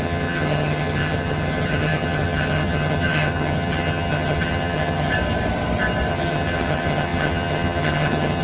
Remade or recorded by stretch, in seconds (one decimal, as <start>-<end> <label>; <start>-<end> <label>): 0.0-5.1 remade; 5.1-6.1 recorded; 6.1-8.4 remade